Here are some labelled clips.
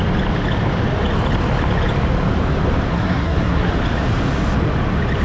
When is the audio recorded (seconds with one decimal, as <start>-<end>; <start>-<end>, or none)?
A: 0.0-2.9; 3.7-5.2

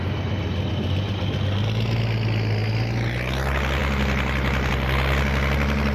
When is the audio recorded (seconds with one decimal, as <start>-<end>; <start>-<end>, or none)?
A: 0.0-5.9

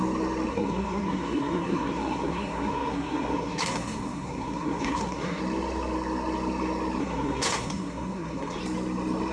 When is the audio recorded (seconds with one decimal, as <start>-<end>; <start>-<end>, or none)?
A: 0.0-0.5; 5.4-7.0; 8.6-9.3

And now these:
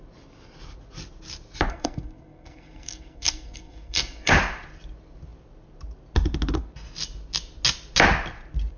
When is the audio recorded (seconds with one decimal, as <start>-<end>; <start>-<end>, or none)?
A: 0.0-1.7; 4.3-8.8

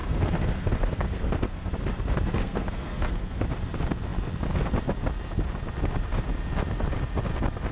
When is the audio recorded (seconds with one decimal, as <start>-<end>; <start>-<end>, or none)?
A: 1.7-2.4; 3.4-7.7